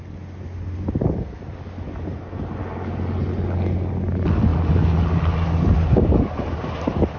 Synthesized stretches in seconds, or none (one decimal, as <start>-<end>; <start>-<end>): none